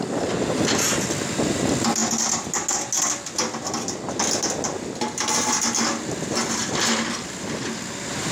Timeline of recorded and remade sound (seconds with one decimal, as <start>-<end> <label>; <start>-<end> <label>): 0.0-8.3 recorded